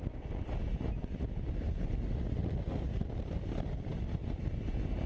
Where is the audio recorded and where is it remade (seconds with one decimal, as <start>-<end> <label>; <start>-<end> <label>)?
0.0-5.1 recorded